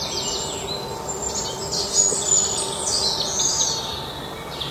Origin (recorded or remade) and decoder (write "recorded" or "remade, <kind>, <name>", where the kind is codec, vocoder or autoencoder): recorded